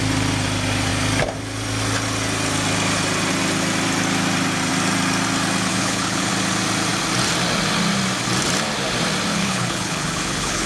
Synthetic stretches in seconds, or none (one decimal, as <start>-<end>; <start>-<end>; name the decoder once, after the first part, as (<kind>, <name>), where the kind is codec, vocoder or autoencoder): 5.7-6.3 (codec, HILCodec); 9.3-10.7